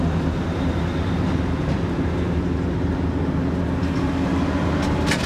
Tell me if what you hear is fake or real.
real